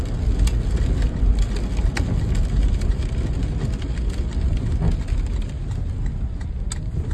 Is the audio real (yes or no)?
yes